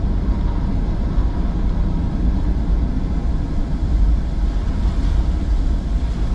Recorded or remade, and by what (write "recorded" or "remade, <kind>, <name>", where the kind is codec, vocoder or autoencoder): recorded